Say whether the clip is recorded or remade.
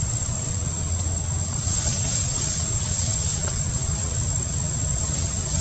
remade